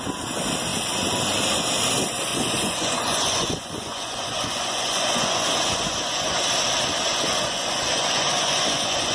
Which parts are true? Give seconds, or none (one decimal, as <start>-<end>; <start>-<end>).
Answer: 0.0-2.3; 6.4-7.1